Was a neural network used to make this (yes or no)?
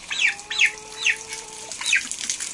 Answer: no